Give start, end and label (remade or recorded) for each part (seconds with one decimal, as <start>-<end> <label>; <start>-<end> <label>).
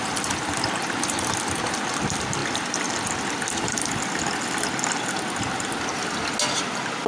0.0-7.1 recorded